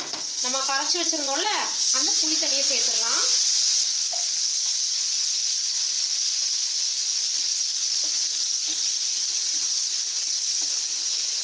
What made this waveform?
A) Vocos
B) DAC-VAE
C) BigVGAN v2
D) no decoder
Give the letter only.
A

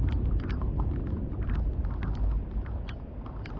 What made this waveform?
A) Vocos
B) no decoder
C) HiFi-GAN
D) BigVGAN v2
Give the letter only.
B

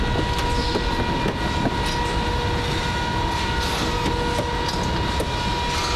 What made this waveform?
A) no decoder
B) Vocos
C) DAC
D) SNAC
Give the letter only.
A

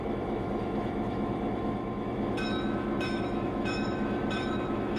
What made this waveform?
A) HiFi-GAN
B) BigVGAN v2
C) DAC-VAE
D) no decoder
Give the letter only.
C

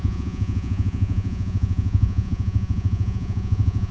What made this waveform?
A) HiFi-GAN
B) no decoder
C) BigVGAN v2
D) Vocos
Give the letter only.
D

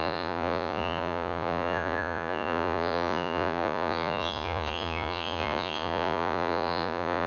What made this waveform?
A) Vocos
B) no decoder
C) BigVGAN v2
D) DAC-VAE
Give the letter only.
A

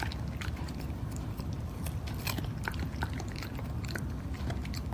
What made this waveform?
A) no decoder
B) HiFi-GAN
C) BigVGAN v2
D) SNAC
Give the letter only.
C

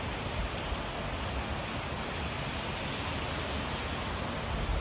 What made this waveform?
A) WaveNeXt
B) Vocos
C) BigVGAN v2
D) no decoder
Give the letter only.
D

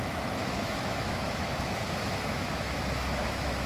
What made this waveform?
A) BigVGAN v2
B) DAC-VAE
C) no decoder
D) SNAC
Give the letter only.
B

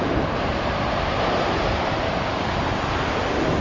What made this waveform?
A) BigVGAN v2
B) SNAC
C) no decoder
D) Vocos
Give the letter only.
C